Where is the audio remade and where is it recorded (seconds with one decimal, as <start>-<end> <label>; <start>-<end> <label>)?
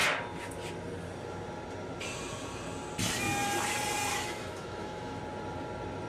0.0-4.1 recorded; 4.1-5.2 remade; 5.2-6.1 recorded